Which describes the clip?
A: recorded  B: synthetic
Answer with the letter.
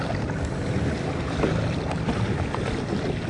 A